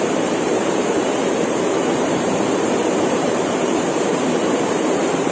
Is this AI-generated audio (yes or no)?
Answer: yes